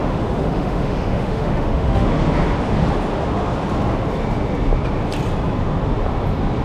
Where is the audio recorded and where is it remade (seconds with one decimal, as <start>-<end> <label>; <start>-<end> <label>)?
0.0-2.3 remade; 2.3-6.6 recorded